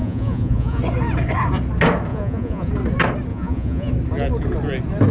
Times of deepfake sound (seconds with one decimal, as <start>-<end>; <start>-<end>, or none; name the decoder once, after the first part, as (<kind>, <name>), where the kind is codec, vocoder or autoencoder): 0.0-0.8 (vocoder, Vocos); 2.1-2.7; 3.3-3.9